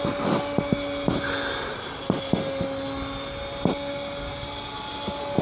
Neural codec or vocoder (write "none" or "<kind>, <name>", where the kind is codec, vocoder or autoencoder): none